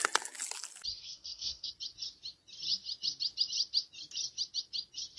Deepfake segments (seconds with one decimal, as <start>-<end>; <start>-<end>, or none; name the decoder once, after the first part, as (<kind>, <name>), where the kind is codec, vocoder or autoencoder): 0.9-1.7 (codec, SNAC)